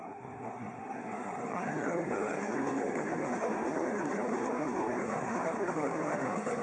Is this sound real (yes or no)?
no